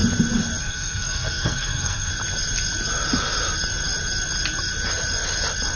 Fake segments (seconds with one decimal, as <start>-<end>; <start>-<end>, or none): 0.6-2.1

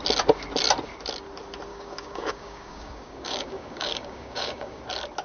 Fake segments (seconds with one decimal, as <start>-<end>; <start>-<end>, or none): 1.7-4.8

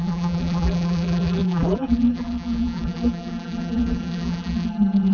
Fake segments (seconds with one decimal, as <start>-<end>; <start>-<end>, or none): 0.0-5.1

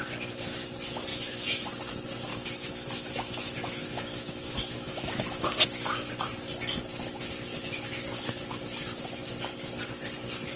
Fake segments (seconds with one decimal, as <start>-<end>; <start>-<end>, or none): 1.1-1.7; 2.3-6.1

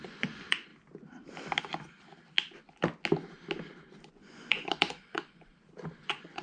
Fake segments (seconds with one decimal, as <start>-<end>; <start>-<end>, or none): 0.0-0.7; 4.1-5.5; 6.0-6.4

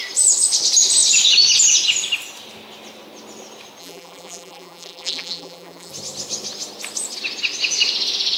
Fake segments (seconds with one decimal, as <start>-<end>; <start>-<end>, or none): 3.8-5.9

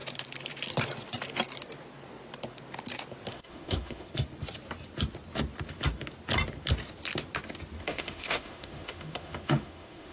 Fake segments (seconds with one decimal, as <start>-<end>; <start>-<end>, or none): 3.3-4.1; 7.8-10.1